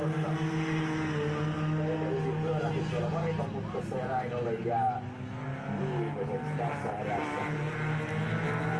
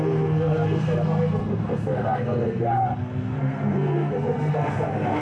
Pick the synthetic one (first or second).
second